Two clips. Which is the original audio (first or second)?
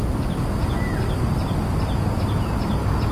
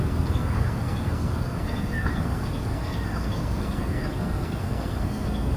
first